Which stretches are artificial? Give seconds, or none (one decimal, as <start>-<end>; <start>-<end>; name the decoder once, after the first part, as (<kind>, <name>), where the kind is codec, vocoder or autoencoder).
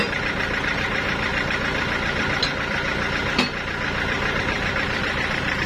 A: 0.0-1.3 (vocoder, BigVGAN v2); 4.4-5.7